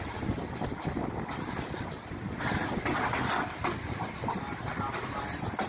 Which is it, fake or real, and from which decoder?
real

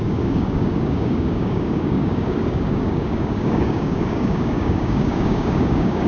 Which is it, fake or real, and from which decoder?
fake, codec, DAC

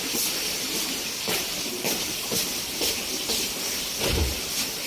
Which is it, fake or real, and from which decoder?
real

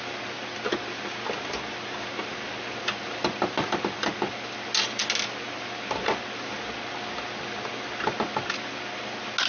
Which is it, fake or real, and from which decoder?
real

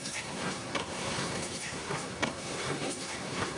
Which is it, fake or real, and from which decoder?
fake, codec, SNAC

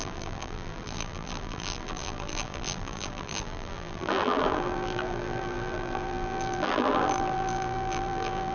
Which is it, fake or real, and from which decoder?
fake, vocoder, BigVGAN v2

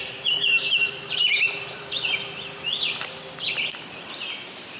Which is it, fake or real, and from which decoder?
fake, vocoder, BigVGAN v2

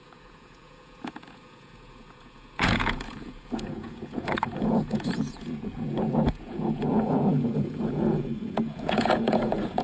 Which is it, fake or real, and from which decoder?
fake, vocoder, Vocos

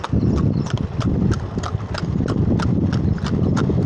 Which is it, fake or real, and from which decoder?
real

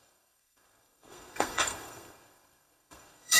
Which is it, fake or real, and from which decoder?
fake, codec, SNAC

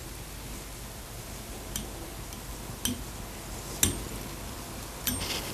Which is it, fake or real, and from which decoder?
real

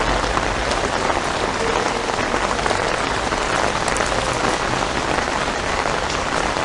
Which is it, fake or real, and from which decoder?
real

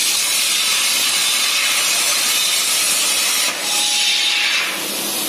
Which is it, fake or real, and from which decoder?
real